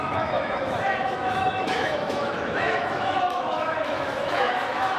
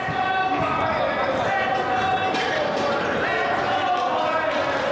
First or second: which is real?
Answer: second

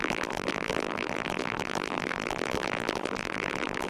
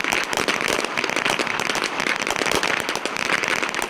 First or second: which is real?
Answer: second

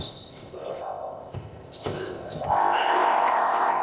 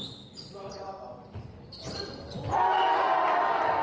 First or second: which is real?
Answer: second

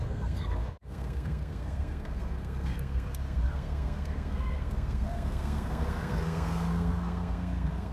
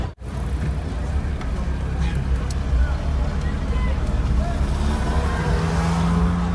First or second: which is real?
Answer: second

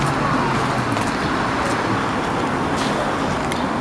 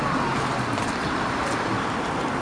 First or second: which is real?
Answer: first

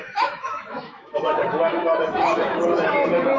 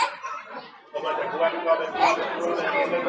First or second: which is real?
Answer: second